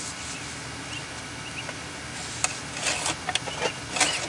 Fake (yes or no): no